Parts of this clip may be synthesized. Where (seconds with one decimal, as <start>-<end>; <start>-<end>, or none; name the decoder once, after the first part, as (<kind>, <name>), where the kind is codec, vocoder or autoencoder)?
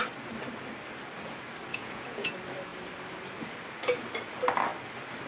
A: 1.7-2.3 (vocoder, Vocos)